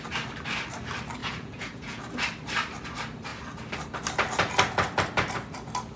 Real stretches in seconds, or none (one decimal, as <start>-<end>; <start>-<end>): 0.0-1.2; 2.0-6.0